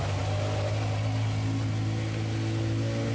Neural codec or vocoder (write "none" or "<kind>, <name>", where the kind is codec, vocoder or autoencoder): none